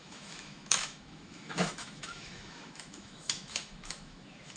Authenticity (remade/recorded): remade